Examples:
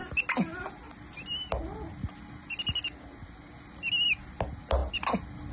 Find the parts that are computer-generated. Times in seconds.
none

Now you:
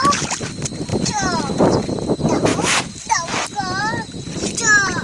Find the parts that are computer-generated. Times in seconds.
none